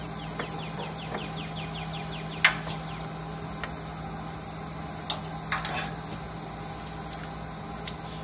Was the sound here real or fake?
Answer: real